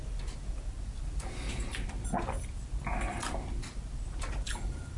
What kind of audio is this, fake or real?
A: real